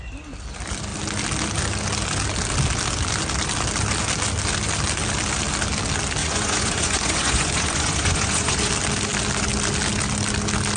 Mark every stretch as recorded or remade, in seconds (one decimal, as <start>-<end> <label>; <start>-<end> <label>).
0.0-6.2 recorded; 6.2-8.7 remade; 8.7-10.8 recorded